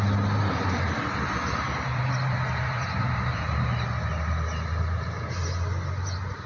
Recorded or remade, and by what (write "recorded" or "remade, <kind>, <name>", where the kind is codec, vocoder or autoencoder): recorded